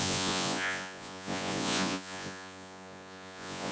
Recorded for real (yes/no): no